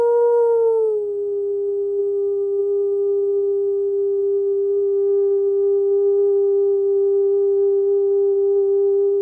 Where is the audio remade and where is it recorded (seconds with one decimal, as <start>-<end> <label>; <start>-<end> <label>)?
0.0-9.2 recorded